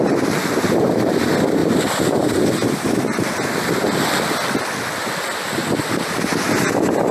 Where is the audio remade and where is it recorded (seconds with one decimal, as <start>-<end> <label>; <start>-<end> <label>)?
0.0-7.1 recorded